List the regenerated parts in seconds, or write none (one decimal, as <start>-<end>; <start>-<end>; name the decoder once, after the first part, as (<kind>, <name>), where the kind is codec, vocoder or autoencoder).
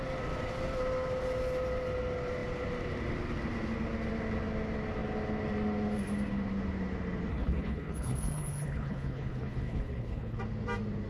7.3-10.4 (codec, HILCodec)